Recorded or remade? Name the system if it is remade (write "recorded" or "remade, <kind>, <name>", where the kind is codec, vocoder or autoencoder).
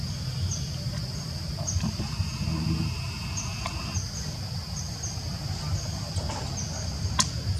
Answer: recorded